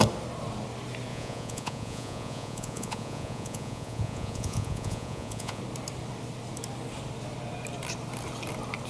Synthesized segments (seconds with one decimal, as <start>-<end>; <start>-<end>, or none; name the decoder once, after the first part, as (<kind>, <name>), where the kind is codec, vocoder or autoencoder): 1.1-5.6 (vocoder, Vocos)